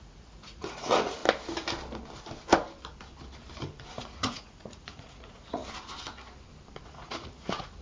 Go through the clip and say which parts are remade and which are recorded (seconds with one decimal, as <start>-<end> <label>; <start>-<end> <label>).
0.0-1.2 remade; 1.2-3.9 recorded; 3.9-5.6 remade; 5.6-6.8 recorded; 6.8-7.8 remade